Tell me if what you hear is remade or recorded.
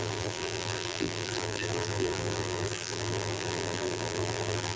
remade